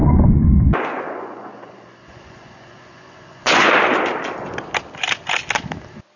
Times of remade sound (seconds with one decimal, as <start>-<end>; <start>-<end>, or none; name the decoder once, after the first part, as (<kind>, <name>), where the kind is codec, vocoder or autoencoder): 0.0-3.7 (vocoder, Vocos)